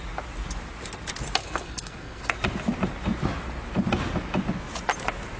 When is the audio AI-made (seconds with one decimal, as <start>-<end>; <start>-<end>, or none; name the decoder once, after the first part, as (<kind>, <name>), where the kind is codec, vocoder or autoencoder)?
1.4-2.4 (codec, SNAC)